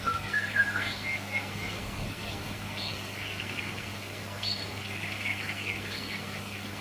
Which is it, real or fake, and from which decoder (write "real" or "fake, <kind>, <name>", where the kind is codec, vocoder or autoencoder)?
fake, codec, SNAC